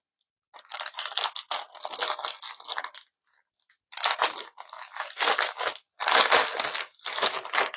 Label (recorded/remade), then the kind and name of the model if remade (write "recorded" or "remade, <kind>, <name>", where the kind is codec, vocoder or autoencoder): recorded